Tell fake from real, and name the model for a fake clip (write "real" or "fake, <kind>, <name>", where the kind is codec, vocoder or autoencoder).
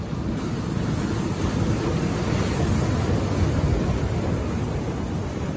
real